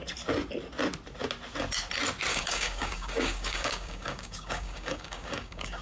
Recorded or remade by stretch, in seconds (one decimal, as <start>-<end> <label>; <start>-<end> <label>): 0.0-2.3 recorded; 2.3-5.8 remade